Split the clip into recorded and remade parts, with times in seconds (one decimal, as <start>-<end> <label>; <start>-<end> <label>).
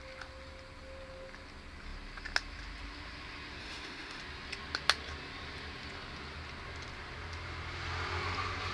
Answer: 0.0-3.6 recorded; 3.6-4.2 remade; 4.2-8.7 recorded